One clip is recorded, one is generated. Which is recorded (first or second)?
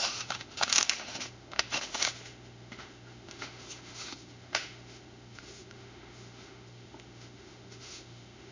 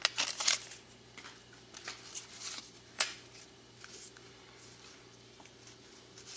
second